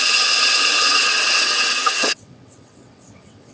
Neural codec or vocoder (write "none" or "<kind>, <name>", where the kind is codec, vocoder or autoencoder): vocoder, WaveNeXt